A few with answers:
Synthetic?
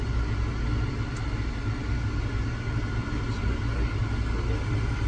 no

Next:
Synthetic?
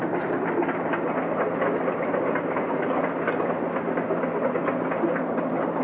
no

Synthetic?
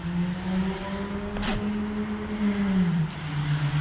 no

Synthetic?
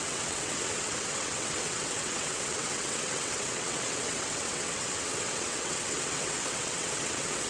yes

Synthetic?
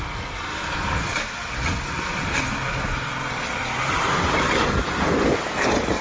no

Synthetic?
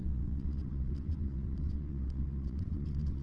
yes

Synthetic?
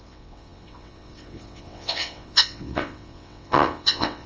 yes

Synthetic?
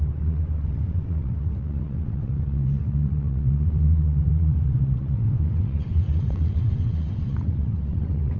yes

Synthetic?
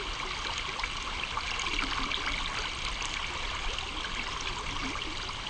no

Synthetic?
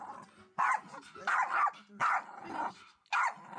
no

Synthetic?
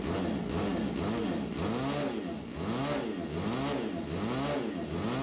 no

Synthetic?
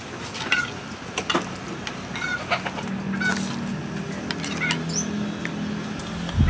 no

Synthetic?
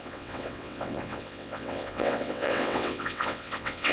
yes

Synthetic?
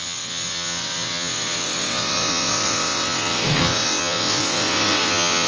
yes